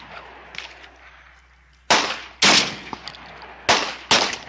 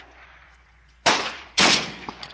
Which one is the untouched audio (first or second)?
first